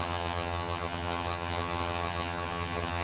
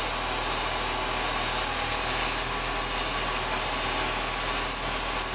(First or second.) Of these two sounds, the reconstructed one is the first